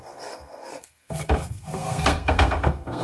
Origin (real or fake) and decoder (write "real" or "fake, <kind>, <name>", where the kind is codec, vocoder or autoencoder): fake, codec, SNAC